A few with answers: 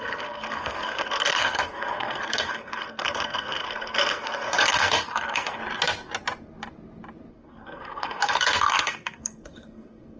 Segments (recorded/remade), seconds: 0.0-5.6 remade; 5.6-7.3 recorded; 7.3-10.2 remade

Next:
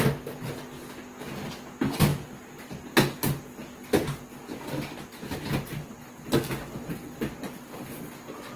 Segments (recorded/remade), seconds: 0.0-8.6 recorded

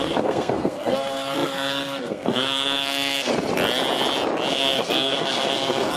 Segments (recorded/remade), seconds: 0.0-3.3 remade; 3.3-4.5 recorded; 4.5-6.0 remade

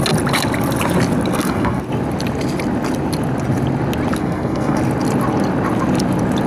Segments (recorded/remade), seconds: 0.0-1.3 recorded; 1.3-1.8 remade; 1.8-4.2 recorded; 4.2-4.8 remade; 4.8-6.5 recorded

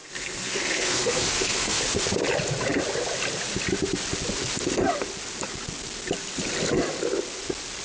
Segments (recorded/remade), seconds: 0.0-1.8 remade; 1.8-7.8 recorded

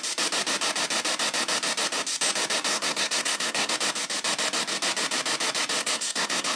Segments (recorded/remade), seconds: 0.0-2.7 recorded; 2.7-3.7 remade; 3.7-5.8 recorded; 5.8-6.6 remade